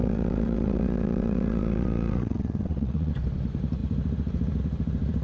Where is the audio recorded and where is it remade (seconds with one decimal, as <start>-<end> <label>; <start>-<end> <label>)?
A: 0.0-3.1 remade; 3.1-5.2 recorded